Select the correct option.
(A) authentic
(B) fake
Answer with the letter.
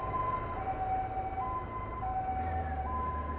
A